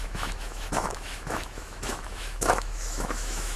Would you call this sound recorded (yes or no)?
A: no